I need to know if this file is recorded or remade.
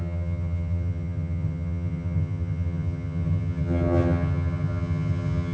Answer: remade